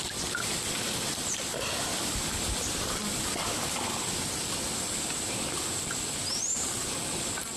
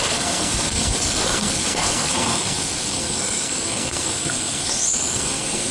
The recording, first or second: first